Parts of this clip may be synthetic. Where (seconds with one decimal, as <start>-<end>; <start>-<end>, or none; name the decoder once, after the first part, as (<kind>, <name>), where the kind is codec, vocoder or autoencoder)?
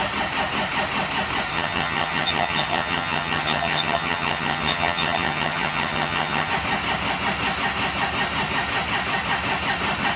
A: 1.5-6.5 (vocoder, HiFi-GAN)